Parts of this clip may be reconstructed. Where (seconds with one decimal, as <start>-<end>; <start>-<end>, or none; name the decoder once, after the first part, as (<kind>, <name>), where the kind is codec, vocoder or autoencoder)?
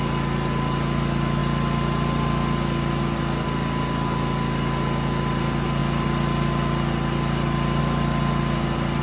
none